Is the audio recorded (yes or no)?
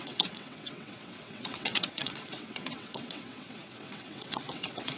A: no